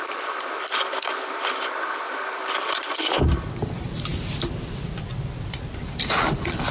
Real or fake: fake